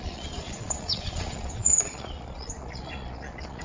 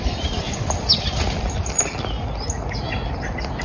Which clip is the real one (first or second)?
second